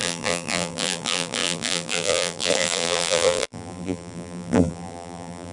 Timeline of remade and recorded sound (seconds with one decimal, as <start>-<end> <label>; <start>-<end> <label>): 0.0-5.5 remade